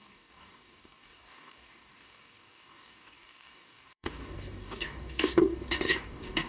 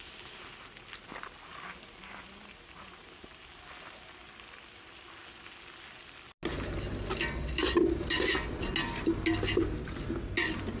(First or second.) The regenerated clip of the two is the first